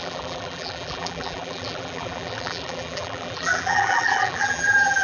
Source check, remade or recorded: remade